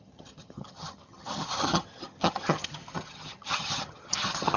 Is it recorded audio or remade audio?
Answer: remade